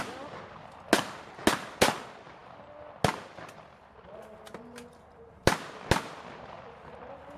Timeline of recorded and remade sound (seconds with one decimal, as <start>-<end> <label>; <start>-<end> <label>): 0.0-7.4 recorded